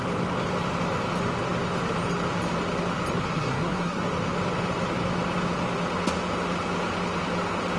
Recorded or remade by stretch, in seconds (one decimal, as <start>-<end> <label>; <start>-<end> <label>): 0.0-3.2 recorded; 3.2-4.0 remade; 4.0-7.8 recorded